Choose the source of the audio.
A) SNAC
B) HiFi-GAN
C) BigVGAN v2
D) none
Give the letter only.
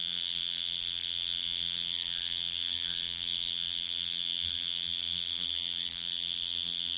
C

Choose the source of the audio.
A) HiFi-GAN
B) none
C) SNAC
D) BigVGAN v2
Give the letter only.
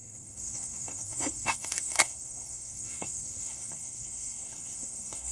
C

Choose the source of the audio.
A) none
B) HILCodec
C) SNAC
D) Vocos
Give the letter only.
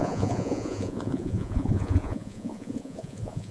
D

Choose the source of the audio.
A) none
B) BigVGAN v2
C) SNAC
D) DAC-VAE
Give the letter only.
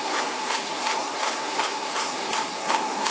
C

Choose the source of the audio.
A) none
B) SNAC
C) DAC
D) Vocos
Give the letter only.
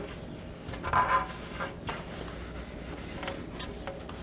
A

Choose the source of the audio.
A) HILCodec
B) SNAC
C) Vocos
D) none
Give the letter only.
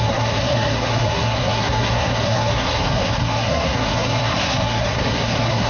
B